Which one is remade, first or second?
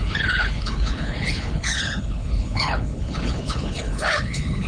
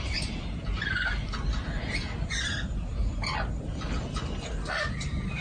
first